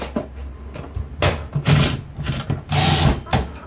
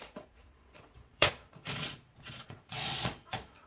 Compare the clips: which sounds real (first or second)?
first